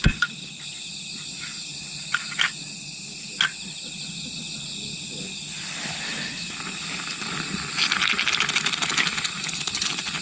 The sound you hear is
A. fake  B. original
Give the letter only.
B